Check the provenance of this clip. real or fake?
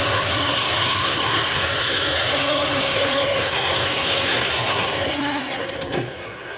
fake